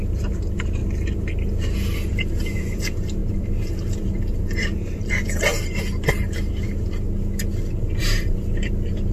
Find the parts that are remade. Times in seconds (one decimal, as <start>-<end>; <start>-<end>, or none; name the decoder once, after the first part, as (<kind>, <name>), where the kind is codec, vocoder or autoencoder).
0.0-0.8 (vocoder, BigVGAN v2); 2.0-5.5; 8.0-9.1